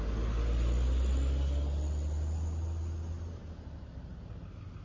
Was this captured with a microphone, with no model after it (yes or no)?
yes